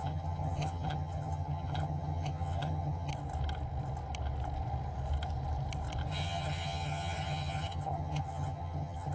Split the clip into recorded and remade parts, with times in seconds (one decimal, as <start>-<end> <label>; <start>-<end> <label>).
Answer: 0.0-3.1 remade; 3.1-6.1 recorded; 6.1-9.1 remade